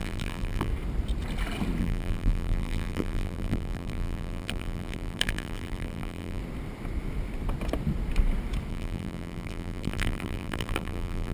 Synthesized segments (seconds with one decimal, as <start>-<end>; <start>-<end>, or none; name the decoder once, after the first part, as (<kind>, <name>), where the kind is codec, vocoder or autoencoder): 0.0-0.7 (vocoder, BigVGAN v2); 1.8-6.4; 8.7-11.3